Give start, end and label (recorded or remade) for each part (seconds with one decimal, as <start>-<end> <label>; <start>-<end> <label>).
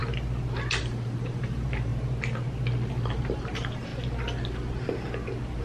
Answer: 0.0-0.8 recorded; 0.8-1.9 remade; 1.9-3.3 recorded; 3.3-3.9 remade; 3.9-5.6 recorded